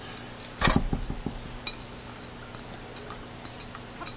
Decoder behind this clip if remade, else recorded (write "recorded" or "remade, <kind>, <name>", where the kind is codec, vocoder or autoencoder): recorded